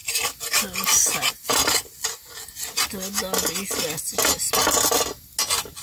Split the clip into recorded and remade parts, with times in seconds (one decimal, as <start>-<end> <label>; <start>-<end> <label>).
0.0-5.8 recorded

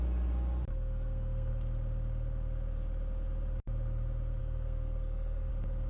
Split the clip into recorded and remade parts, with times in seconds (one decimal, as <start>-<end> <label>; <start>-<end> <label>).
0.0-0.7 recorded; 0.7-1.5 remade; 1.5-4.4 recorded; 4.4-5.5 remade; 5.5-5.9 recorded

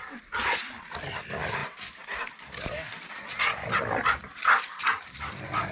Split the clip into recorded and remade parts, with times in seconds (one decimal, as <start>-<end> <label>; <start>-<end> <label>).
0.0-5.7 recorded

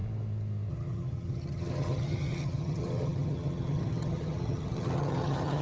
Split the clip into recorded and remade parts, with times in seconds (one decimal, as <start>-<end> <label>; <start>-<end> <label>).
0.0-0.7 recorded; 0.7-5.6 remade

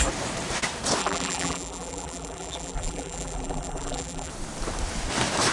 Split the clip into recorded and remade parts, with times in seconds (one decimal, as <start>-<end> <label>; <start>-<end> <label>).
0.0-1.0 recorded; 1.0-4.3 remade; 4.3-5.5 recorded